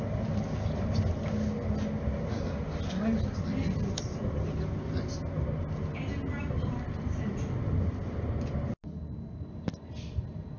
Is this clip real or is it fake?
real